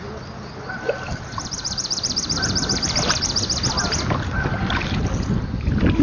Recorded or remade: recorded